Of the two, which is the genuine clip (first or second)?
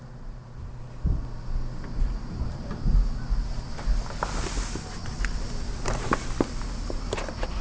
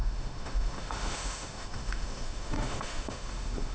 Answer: first